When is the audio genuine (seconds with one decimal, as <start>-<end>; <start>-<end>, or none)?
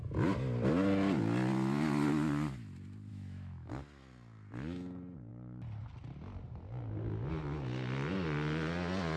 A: 0.0-3.1; 3.7-9.2